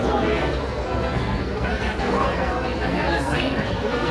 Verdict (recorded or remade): remade